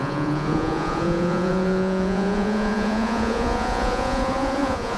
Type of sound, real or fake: fake